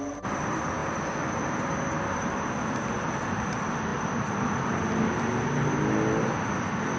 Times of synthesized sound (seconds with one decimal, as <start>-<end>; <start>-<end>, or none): none